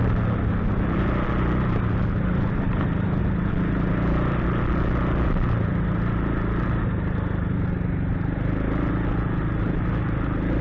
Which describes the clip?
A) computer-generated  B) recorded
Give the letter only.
B